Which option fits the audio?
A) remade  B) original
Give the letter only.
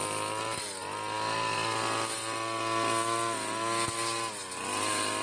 B